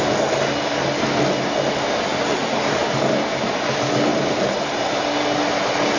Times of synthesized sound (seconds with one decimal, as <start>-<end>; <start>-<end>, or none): 2.1-3.4; 4.1-5.1